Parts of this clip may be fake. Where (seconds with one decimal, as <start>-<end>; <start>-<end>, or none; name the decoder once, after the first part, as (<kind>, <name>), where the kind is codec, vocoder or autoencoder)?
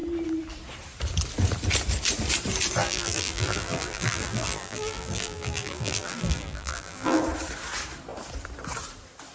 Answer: 2.8-7.2 (vocoder, BigVGAN v2)